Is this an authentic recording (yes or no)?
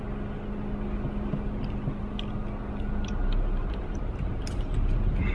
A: yes